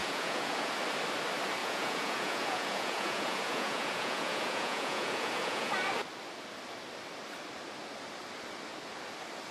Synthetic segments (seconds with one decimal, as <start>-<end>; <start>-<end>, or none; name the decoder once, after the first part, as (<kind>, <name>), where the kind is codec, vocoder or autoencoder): 0.0-0.7 (vocoder, Vocos); 1.6-5.7

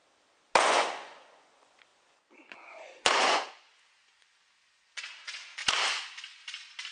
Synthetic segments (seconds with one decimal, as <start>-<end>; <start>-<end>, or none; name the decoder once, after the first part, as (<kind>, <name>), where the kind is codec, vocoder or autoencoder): 0.6-5.6 (vocoder, Vocos)

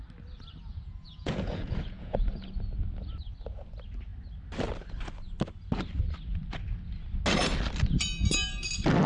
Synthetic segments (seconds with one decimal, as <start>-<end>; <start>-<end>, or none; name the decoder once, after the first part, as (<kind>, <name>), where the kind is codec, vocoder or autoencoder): 0.7-2.5 (vocoder, Vocos)